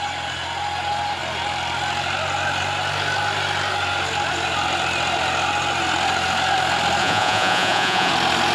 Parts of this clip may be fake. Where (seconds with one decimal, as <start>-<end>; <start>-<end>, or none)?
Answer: 7.0-8.1